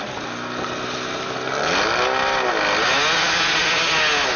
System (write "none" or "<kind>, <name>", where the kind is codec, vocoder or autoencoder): none